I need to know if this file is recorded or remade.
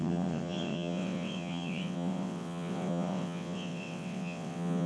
remade